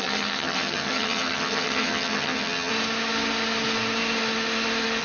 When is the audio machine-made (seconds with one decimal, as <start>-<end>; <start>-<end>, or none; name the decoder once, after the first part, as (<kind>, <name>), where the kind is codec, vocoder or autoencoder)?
0.0-2.7 (vocoder, HiFi-GAN)